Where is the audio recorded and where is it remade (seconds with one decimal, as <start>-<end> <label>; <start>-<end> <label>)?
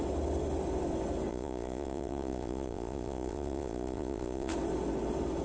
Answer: 0.0-1.3 recorded; 1.3-4.5 remade; 4.5-5.4 recorded